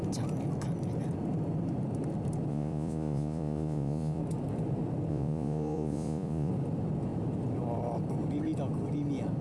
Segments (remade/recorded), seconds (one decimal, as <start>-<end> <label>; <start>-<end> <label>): 0.0-2.5 recorded; 2.5-4.2 remade; 4.2-5.1 recorded; 5.1-6.5 remade; 6.5-9.4 recorded